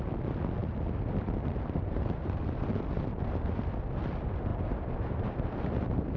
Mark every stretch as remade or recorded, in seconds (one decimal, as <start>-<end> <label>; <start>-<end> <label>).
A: 0.0-0.6 recorded; 0.6-3.7 remade; 3.7-4.5 recorded; 4.5-6.2 remade